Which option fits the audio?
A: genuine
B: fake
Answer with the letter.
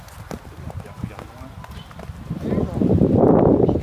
A